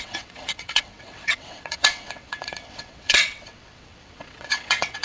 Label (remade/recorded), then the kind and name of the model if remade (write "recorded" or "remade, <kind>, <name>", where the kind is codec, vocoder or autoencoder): remade, vocoder, WaveNeXt